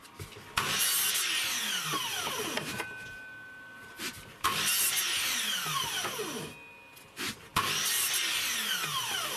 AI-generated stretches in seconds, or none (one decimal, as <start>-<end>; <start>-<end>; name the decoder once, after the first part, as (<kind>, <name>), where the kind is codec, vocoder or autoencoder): none